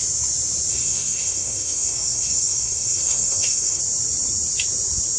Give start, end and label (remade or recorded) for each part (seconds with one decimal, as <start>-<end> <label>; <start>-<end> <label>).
0.0-0.7 recorded; 0.7-3.8 remade; 3.8-5.2 recorded